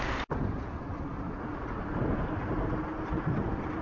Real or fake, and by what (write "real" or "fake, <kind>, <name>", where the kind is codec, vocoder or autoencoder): real